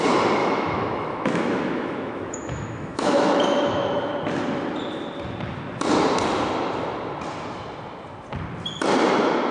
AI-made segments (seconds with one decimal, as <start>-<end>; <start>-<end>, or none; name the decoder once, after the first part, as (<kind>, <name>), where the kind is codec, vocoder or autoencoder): 0.4-4.1 (autoencoder, DAC-VAE)

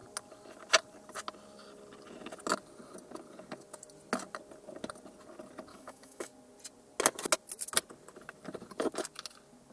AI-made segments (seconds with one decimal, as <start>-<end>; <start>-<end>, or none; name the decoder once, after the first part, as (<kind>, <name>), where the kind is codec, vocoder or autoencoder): 5.7-6.3 (autoencoder, DAC-VAE)